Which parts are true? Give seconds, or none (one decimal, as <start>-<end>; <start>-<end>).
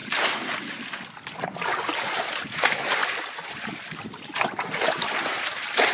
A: 0.0-1.4; 3.0-3.5